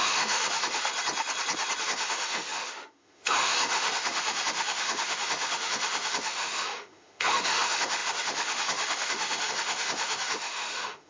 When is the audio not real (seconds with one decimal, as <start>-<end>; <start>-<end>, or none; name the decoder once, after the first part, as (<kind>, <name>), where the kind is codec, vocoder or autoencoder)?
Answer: 0.0-0.9 (autoencoder, DAC-VAE); 1.8-11.1